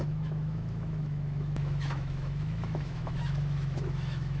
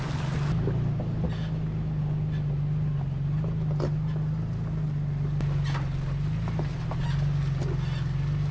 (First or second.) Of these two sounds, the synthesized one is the first